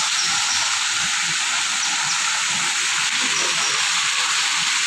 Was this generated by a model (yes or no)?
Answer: no